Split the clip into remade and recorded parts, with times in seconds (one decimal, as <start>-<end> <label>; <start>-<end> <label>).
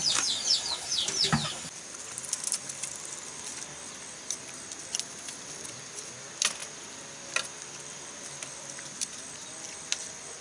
0.0-10.4 recorded